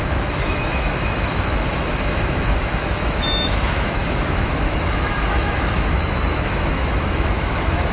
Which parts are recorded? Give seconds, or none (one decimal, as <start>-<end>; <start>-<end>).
none